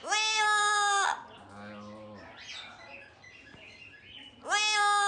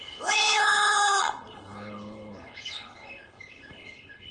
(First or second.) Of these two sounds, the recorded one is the first